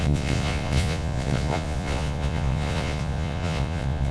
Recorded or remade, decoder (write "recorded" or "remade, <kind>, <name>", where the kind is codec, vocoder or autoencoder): remade, vocoder, Vocos